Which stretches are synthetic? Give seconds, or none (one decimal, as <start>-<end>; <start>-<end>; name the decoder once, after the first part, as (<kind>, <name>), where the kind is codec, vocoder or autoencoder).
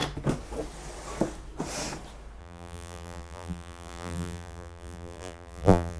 2.4-6.0 (vocoder, BigVGAN v2)